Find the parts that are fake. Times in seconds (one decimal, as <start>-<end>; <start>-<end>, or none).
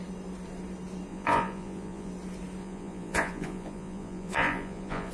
1.1-2.1; 2.6-5.1